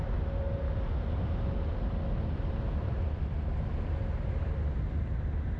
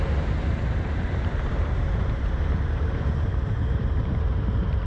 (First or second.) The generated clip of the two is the second